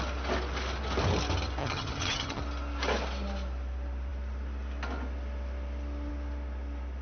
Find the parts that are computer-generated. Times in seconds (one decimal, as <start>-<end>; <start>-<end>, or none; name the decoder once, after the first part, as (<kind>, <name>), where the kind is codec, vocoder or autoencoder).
1.6-2.4 (vocoder, HiFi-GAN)